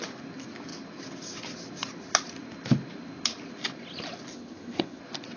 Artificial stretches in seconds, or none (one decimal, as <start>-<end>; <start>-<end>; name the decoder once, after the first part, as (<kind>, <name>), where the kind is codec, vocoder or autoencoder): 4.3-5.0 (vocoder, HiFi-GAN)